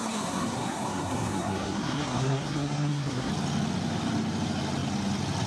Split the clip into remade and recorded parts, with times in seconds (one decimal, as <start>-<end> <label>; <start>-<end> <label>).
0.0-3.3 remade; 3.3-5.5 recorded